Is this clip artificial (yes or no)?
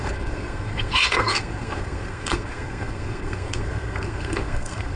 yes